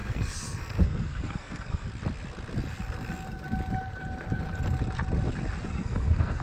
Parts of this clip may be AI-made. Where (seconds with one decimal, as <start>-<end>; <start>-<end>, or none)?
0.0-1.9; 5.7-6.4